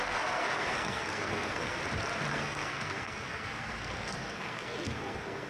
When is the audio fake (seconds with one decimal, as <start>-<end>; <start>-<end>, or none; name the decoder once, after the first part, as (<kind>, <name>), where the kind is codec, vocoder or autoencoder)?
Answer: 0.0-1.8 (codec, SNAC); 2.3-5.5